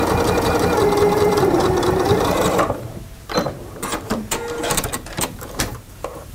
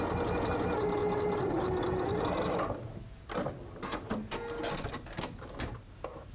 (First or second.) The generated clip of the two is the first